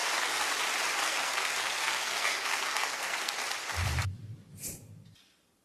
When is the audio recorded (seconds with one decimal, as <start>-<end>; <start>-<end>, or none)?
0.5-1.0; 3.3-5.6